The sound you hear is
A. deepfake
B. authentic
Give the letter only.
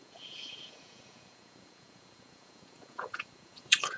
A